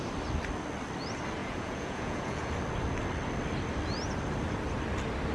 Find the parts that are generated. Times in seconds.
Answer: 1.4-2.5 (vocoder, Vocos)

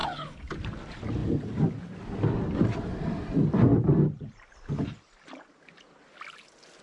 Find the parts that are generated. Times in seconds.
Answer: 0.0-0.5 (codec, HILCodec)

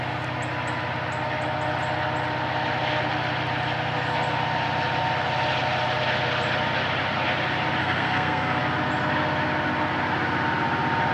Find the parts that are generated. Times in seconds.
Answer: 7.8-8.6 (codec, SNAC)